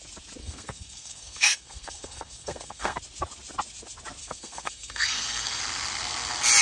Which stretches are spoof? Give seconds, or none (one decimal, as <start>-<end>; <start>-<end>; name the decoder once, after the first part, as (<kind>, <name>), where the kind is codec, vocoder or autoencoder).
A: 0.4-3.0 (codec, SNAC); 4.2-5.6